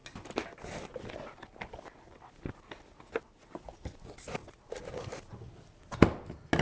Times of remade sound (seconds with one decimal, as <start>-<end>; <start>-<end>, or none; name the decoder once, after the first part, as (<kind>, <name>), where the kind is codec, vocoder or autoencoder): none